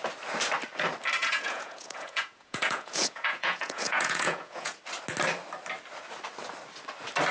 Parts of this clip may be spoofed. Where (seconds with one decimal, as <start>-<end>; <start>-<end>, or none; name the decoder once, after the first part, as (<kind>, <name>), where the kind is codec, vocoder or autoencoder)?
1.2-4.8 (vocoder, Vocos)